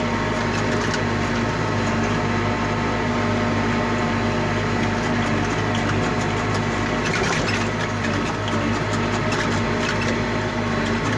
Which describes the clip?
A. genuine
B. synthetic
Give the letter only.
A